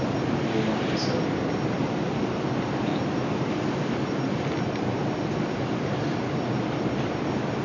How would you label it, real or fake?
real